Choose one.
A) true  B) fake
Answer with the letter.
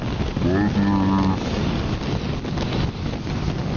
A